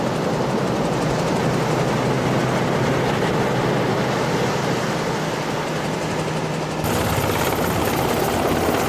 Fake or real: real